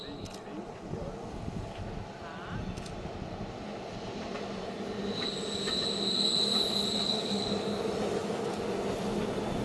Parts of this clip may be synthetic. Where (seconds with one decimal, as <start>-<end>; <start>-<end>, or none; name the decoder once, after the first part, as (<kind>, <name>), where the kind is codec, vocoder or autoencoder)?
7.0-7.8 (codec, DAC)